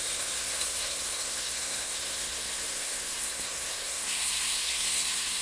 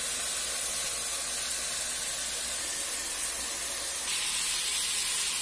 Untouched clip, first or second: second